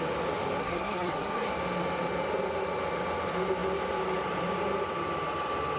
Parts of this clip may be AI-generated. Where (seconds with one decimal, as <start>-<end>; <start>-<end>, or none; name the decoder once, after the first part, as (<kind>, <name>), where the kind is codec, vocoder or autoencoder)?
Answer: 0.6-1.5 (codec, SNAC)